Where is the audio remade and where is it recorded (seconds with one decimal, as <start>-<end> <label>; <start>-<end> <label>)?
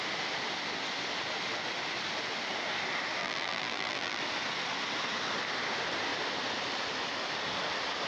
0.0-3.2 recorded; 3.2-4.2 remade; 4.2-8.1 recorded